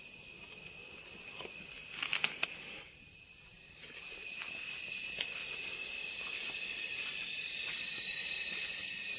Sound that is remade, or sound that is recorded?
recorded